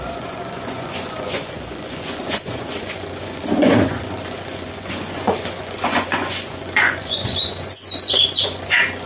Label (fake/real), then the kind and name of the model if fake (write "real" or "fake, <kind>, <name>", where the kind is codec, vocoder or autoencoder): fake, vocoder, Vocos